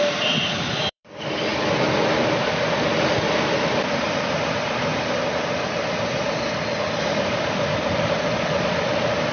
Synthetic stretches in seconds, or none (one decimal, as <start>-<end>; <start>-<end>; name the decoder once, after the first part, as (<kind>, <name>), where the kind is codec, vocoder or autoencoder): 0.0-1.5 (vocoder, BigVGAN v2); 3.1-4.9; 6.8-9.3